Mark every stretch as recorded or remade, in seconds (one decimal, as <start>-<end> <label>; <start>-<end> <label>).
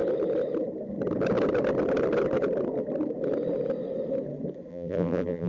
0.0-4.7 recorded; 4.7-5.5 remade